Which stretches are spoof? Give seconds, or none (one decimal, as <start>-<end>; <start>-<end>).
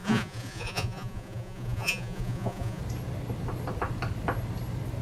0.0-2.8